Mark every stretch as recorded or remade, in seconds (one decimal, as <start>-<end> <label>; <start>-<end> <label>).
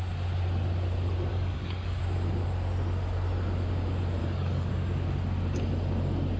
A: 0.0-1.3 recorded; 1.3-2.0 remade; 2.0-4.2 recorded; 4.2-4.7 remade; 4.7-6.4 recorded